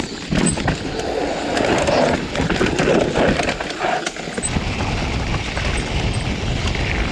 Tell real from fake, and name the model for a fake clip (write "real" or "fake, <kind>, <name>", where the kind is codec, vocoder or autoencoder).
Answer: real